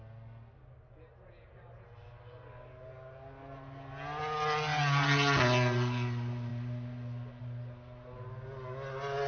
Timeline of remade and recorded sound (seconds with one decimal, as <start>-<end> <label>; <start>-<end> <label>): 0.0-9.3 recorded